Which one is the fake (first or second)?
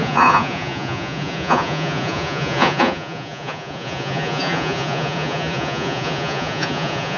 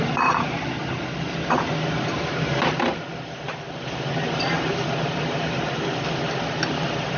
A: first